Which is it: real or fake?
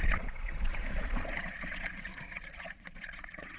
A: fake